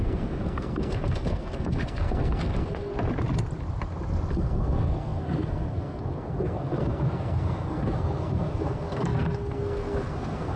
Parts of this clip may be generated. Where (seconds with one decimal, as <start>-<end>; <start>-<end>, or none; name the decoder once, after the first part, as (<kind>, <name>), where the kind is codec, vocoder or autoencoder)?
0.0-2.9 (codec, SNAC); 4.3-10.6

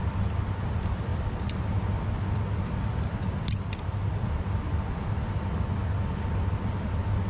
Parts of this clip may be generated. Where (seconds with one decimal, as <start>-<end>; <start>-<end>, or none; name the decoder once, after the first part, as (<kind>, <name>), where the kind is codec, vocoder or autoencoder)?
none

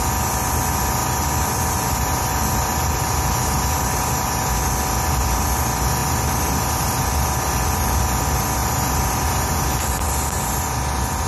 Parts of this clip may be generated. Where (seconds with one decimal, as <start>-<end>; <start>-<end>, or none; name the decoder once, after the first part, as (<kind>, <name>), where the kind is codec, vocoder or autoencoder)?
1.0-4.5 (vocoder, BigVGAN v2); 6.0-7.0; 8.6-9.8

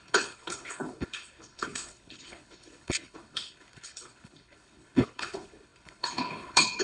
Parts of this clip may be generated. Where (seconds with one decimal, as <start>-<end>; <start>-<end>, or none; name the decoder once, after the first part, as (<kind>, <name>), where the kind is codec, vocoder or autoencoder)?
0.0-6.8 (codec, HILCodec)

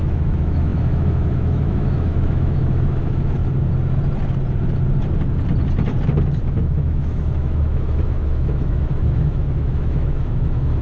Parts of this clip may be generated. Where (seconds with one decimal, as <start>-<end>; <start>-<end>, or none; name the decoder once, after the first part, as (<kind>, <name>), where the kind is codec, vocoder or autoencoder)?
0.0-3.4 (autoencoder, DAC-VAE); 6.4-10.8

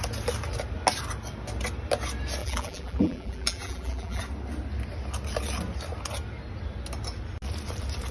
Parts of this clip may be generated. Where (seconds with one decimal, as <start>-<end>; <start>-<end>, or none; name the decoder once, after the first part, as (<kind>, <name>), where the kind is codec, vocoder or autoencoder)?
2.4-4.2 (vocoder, BigVGAN v2)